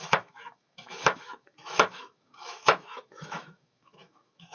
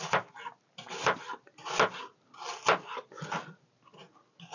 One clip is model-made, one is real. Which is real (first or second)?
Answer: second